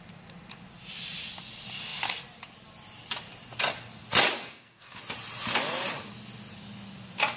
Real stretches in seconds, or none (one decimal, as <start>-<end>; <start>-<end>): 0.0-4.4; 5.0-7.4